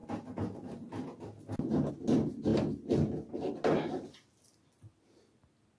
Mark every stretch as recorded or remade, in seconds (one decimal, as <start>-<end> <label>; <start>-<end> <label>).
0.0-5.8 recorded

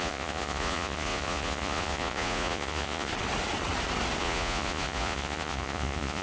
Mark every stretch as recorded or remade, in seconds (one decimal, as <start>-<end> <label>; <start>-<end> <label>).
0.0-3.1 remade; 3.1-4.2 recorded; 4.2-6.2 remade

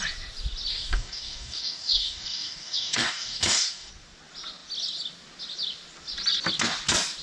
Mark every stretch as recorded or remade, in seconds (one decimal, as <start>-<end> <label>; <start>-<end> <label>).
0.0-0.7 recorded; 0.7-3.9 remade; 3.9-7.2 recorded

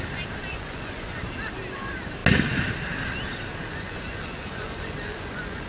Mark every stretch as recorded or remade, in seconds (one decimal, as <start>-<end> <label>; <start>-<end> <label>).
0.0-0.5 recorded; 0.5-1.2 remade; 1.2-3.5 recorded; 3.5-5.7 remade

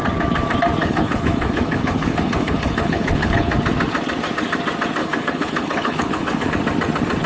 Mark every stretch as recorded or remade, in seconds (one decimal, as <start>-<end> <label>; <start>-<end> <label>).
0.0-0.8 recorded; 0.8-3.5 remade; 3.5-5.0 recorded; 5.0-6.5 remade; 6.5-7.3 recorded

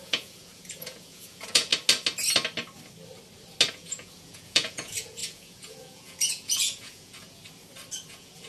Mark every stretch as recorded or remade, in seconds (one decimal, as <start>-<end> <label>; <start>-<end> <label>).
0.0-1.7 remade; 1.7-3.7 recorded; 3.7-7.4 remade; 7.4-8.1 recorded; 8.1-8.5 remade

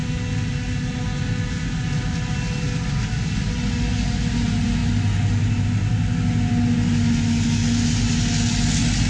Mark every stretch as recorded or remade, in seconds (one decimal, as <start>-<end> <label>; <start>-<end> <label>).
0.0-9.1 recorded